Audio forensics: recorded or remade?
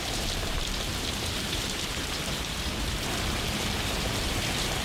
remade